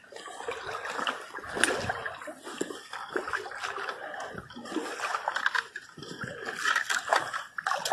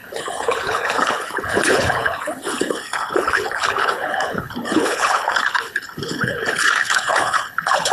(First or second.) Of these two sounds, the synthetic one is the second